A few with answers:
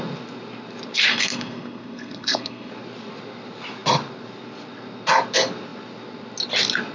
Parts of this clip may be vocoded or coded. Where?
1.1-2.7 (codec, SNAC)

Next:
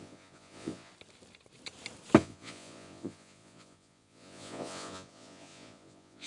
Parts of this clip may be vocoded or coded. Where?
0.0-0.9 (vocoder, Vocos); 2.2-6.3

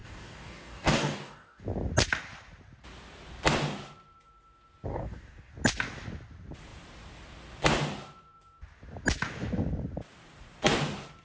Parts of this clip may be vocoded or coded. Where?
0.0-1.6 (codec, DAC); 4.9-5.5

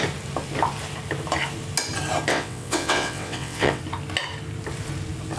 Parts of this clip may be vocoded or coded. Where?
2.3-3.8 (vocoder, WaveNeXt)

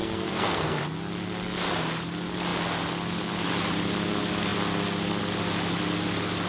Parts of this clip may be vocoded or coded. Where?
0.0-0.8 (codec, SNAC)

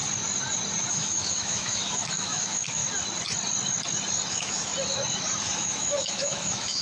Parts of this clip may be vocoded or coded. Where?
0.9-2.8 (autoencoder, DAC-VAE); 4.3-4.7; 5.4-6.8